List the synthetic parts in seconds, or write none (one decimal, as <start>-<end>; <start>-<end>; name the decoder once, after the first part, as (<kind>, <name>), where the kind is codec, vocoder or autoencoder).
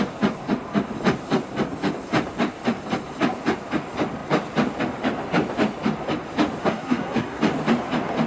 6.6-7.4 (codec, SNAC)